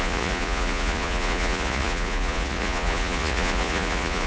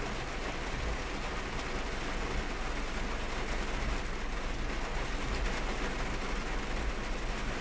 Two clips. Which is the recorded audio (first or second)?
second